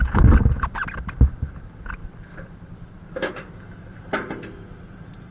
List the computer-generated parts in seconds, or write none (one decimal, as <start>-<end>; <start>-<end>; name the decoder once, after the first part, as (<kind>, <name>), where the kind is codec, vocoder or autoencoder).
none